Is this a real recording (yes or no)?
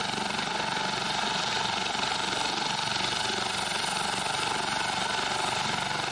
yes